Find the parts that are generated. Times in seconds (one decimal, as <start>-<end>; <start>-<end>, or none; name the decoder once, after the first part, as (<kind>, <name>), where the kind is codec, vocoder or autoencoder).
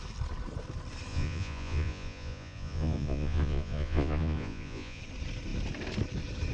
1.1-5.0 (vocoder, Vocos)